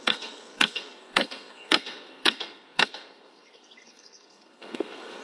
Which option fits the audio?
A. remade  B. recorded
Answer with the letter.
A